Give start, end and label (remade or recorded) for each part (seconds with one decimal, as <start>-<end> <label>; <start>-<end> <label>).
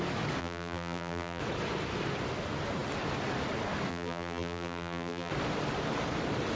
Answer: 0.0-0.4 recorded; 0.4-1.4 remade; 1.4-3.9 recorded; 3.9-5.3 remade; 5.3-6.6 recorded